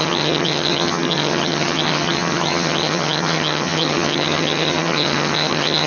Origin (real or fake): fake